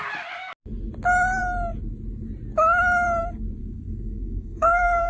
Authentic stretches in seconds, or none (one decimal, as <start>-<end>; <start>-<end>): 0.0-3.6